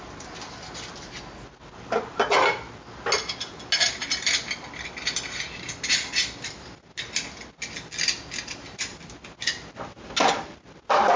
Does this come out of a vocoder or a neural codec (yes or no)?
no